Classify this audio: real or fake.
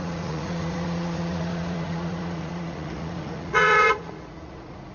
fake